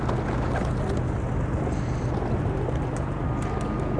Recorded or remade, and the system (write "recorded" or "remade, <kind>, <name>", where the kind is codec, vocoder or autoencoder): recorded